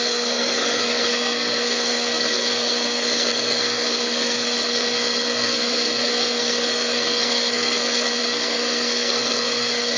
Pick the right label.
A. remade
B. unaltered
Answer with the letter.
A